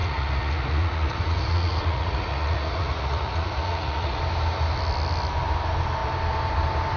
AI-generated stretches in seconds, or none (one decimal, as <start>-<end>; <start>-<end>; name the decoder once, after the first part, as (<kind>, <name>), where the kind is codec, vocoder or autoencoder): 0.0-4.2 (vocoder, Vocos)